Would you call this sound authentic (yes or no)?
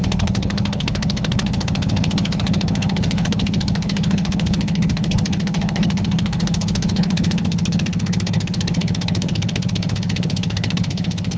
no